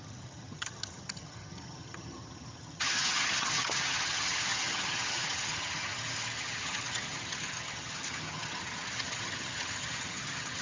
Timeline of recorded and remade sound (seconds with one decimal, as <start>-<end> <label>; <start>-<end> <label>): 0.0-10.6 remade